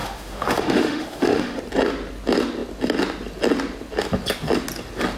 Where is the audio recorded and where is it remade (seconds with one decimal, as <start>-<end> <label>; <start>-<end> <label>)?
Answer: 0.0-1.6 remade; 1.6-5.2 recorded